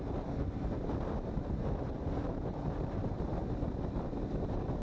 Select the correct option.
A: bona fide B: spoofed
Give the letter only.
B